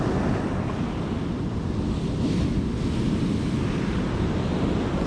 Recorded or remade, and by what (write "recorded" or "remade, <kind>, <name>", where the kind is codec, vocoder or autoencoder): recorded